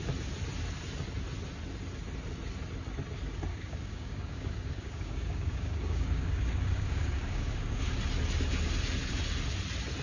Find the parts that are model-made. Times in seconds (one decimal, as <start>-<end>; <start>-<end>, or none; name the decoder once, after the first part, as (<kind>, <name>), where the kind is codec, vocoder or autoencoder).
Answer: 3.5-8.0 (codec, DAC)